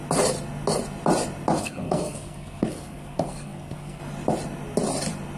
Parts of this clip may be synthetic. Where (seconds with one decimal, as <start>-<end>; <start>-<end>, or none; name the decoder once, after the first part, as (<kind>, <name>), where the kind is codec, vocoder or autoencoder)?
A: 1.6-4.0 (codec, SNAC)